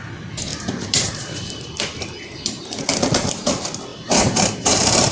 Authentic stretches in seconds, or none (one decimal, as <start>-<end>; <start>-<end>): 0.0-0.5; 3.5-3.9